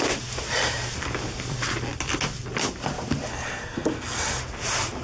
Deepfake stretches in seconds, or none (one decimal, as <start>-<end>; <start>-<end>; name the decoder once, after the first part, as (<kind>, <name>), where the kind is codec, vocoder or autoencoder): 3.3-4.4 (codec, SNAC)